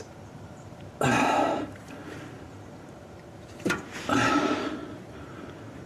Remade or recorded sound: remade